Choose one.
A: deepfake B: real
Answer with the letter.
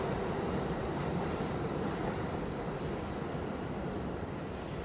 A